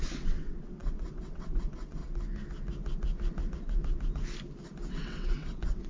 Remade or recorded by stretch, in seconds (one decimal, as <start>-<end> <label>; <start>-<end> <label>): 0.0-2.0 remade; 2.0-4.9 recorded; 4.9-5.9 remade